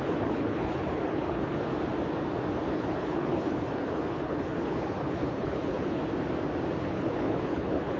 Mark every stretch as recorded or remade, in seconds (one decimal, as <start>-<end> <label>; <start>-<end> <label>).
0.0-1.7 remade; 1.7-2.7 recorded; 2.7-6.0 remade; 6.0-6.8 recorded; 6.8-8.0 remade